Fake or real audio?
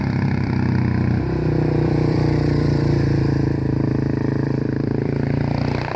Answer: fake